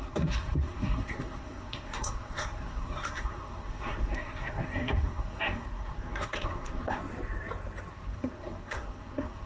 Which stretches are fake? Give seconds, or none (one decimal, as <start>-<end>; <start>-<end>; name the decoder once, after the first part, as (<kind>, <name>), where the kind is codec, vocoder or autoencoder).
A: 0.0-7.0 (codec, SNAC); 7.9-9.5